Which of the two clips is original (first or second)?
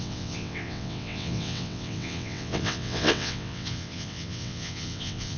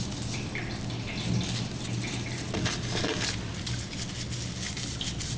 second